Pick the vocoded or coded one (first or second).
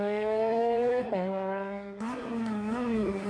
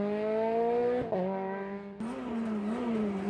first